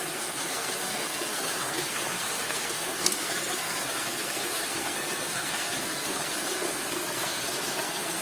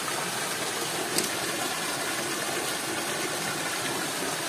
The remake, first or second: first